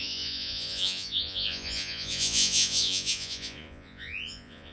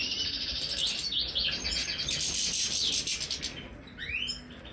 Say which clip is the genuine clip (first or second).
second